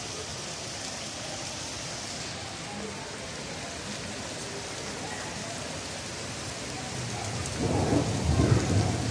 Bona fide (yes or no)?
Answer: yes